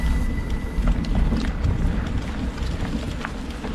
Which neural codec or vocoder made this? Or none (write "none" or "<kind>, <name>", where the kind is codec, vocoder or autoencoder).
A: none